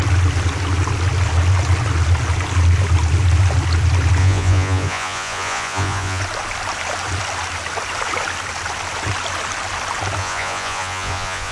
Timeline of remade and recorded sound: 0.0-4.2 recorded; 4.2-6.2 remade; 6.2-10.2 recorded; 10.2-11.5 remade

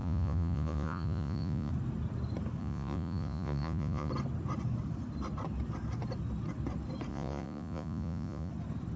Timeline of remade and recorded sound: 0.0-1.7 remade; 1.7-2.6 recorded; 2.6-4.1 remade; 4.1-7.1 recorded; 7.1-8.5 remade; 8.5-9.0 recorded

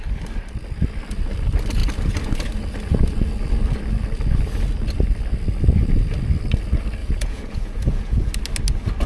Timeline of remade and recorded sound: 0.0-7.0 recorded; 7.0-8.3 remade; 8.3-9.1 recorded

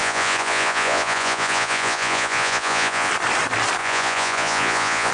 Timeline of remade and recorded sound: 0.0-3.1 remade; 3.1-3.8 recorded; 3.8-5.1 remade

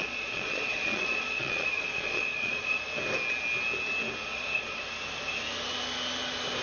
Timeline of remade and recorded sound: 0.0-2.8 remade; 2.8-4.3 recorded; 4.3-4.8 remade; 4.8-6.6 recorded